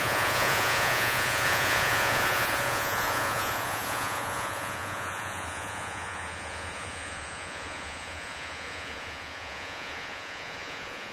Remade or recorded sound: remade